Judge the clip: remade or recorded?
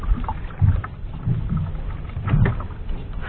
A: recorded